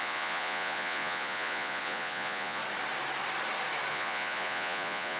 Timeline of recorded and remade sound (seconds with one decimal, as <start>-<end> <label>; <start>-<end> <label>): 0.0-2.6 remade; 2.6-3.9 recorded; 3.9-5.2 remade